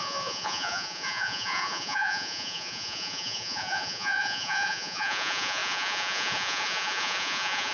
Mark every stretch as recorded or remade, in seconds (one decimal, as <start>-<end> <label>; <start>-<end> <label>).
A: 0.0-7.7 remade

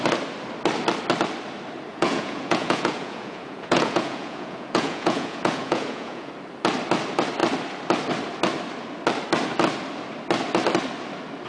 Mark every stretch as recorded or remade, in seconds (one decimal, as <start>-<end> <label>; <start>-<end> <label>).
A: 0.0-1.9 recorded; 1.9-6.3 remade; 6.3-11.5 recorded

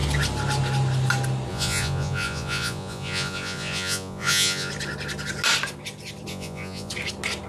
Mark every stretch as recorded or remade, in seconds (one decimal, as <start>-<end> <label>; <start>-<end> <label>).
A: 0.0-1.5 recorded; 1.5-4.7 remade; 4.7-6.3 recorded; 6.3-6.9 remade; 6.9-7.5 recorded

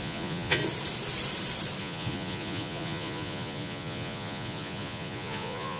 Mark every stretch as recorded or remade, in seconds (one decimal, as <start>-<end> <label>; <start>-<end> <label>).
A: 0.0-0.6 remade; 0.6-1.8 recorded; 1.8-5.8 remade

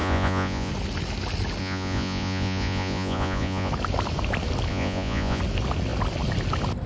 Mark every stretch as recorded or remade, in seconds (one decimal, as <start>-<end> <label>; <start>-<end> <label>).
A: 0.0-0.7 remade; 0.7-1.6 recorded; 1.6-3.7 remade; 3.7-4.7 recorded; 4.7-5.4 remade; 5.4-6.9 recorded

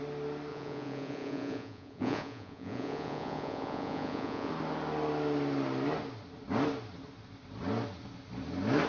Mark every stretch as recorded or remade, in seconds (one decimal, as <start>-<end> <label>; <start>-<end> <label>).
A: 0.0-0.5 recorded; 0.5-4.5 remade; 4.5-8.9 recorded